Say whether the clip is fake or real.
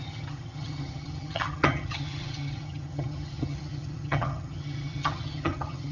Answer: fake